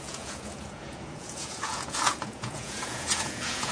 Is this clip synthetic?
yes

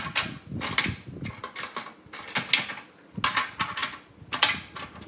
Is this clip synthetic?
no